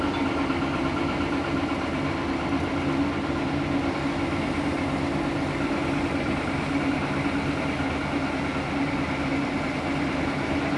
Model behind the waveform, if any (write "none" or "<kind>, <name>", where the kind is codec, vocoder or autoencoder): none